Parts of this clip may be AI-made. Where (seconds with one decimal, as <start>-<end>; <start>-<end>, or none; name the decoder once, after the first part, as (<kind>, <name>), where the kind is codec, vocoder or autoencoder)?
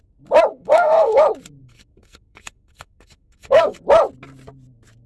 0.5-1.2 (codec, SNAC); 1.6-3.8